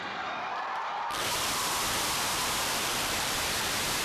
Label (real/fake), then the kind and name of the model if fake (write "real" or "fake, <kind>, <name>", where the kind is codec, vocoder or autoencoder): fake, vocoder, BigVGAN v2